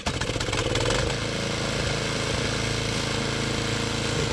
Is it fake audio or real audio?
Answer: real